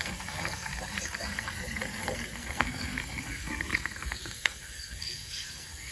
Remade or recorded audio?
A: remade